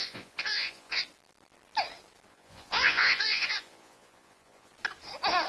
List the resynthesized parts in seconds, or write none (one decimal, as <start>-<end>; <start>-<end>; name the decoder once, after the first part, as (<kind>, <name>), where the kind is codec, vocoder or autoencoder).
0.0-1.0 (vocoder, Vocos); 2.3-4.7